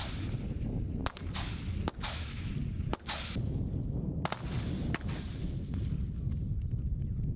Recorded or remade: recorded